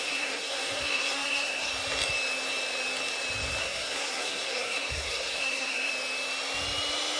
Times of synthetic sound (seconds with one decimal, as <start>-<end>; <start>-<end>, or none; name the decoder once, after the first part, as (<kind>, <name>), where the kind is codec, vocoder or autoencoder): 0.0-1.7 (codec, SNAC); 3.6-5.9